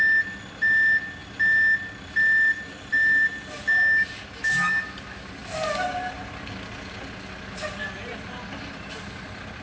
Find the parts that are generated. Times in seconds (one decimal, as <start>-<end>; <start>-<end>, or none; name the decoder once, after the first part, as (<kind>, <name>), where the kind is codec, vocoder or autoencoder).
none